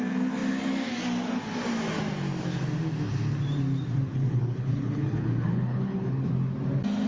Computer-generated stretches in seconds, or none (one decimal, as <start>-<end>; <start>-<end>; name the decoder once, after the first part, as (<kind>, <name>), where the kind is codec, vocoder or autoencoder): 4.1-6.3 (codec, HILCodec)